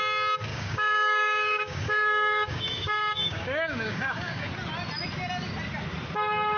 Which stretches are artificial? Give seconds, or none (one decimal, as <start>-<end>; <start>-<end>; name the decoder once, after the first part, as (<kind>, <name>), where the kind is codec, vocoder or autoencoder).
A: 0.5-4.5 (codec, DAC)